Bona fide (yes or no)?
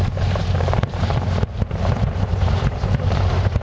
no